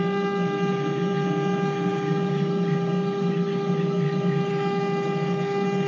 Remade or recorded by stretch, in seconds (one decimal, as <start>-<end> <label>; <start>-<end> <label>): 0.0-5.9 recorded